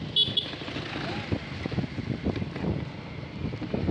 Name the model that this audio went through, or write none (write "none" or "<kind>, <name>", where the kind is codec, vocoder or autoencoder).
none